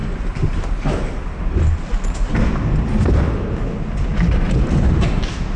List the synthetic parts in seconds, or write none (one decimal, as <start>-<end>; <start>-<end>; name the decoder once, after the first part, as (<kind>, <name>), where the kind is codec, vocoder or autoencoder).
none